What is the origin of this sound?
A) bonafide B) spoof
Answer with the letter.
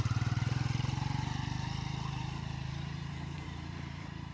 B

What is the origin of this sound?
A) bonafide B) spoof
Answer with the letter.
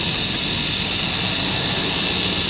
A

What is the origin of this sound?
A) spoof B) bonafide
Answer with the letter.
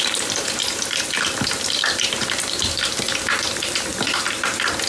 A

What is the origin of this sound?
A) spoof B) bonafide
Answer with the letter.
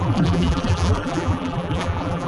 A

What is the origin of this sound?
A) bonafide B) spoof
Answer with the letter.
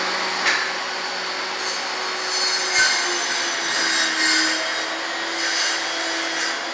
A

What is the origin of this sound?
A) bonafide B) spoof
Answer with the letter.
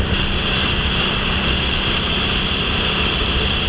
A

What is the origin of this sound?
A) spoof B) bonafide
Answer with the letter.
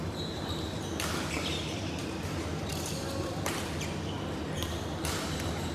A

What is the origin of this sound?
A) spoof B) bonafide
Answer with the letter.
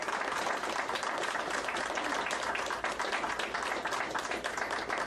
A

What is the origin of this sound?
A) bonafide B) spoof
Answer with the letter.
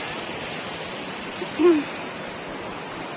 A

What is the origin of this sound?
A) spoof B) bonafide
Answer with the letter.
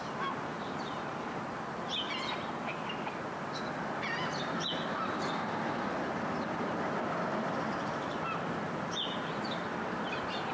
A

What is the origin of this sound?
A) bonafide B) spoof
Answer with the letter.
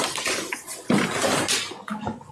A